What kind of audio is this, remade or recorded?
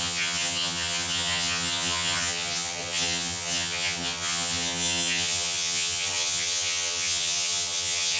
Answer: remade